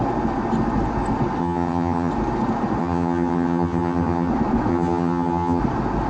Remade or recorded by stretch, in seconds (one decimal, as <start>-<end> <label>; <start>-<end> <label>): 0.0-1.4 recorded; 1.4-2.1 remade; 2.1-2.8 recorded; 2.8-4.3 remade; 4.3-4.7 recorded; 4.7-5.6 remade; 5.6-6.1 recorded